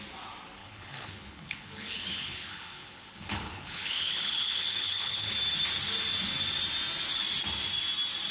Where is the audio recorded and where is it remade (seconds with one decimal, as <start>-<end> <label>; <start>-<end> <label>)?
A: 0.0-0.6 recorded; 0.6-5.3 remade; 5.3-8.3 recorded